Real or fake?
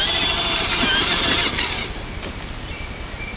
real